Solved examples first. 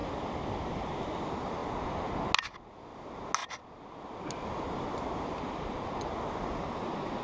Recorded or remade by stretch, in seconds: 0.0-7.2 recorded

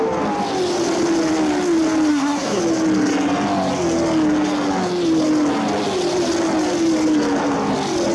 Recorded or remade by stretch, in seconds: 0.0-2.1 recorded; 2.1-2.6 remade; 2.6-8.1 recorded

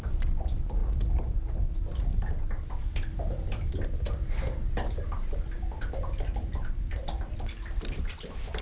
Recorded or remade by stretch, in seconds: 0.0-0.8 remade; 0.8-5.0 recorded; 5.0-8.6 remade

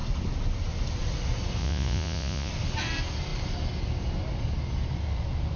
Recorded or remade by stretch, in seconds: 0.0-1.6 recorded; 1.6-2.5 remade; 2.5-5.6 recorded

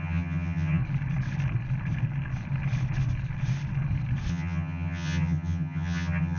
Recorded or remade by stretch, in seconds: 0.0-0.8 remade; 0.8-4.3 recorded; 4.3-6.4 remade

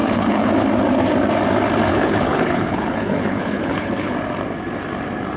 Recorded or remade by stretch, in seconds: 0.0-0.5 remade; 0.5-1.9 recorded; 1.9-4.1 remade; 4.1-5.4 recorded

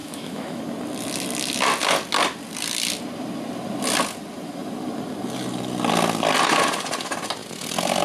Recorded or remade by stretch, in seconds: 0.0-0.6 remade; 0.6-8.0 recorded

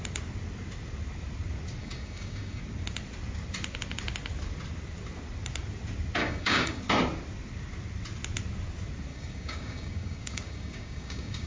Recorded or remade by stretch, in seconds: 0.0-1.8 recorded; 1.8-2.6 remade; 2.6-6.2 recorded; 6.2-6.8 remade; 6.8-9.1 recorded; 9.1-11.5 remade